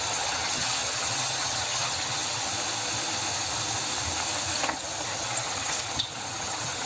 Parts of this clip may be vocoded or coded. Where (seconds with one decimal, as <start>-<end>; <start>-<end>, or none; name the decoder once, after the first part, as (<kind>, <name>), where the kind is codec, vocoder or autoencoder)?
0.0-2.5 (vocoder, HiFi-GAN); 4.6-6.9